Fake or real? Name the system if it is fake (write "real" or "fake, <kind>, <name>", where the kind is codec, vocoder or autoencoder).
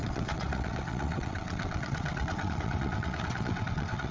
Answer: fake, vocoder, WaveNeXt